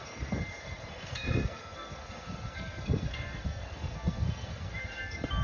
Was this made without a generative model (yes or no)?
no